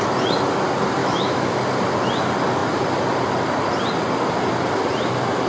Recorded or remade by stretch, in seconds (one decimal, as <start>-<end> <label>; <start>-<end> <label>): 0.0-1.0 recorded; 1.0-1.6 remade; 1.6-5.5 recorded